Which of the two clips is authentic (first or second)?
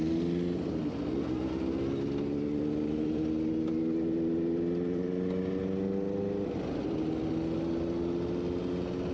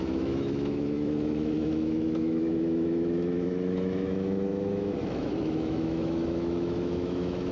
first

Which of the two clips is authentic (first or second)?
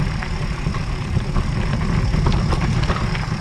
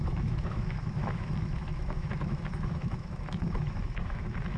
first